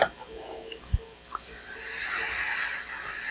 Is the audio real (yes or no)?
yes